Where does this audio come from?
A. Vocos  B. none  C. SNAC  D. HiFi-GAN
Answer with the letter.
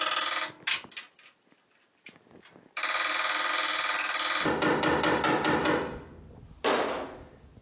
B